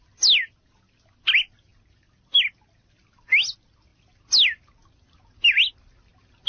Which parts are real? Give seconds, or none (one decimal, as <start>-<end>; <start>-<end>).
0.0-6.5